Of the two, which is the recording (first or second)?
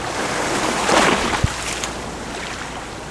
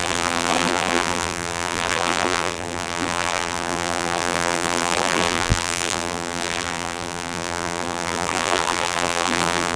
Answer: first